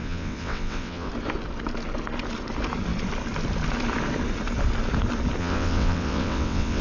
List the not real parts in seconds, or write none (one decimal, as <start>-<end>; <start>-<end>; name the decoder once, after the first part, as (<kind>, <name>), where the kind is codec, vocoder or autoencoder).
0.0-1.1 (vocoder, WaveNeXt); 5.4-6.8